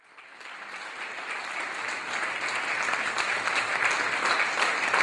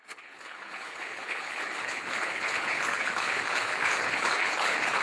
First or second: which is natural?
first